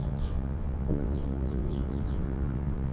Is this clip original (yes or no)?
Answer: no